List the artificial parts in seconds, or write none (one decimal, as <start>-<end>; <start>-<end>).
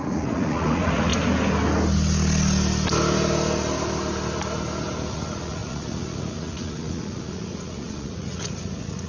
0.0-1.1; 5.1-9.1